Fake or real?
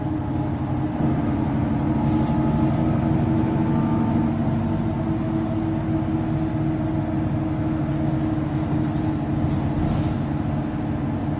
real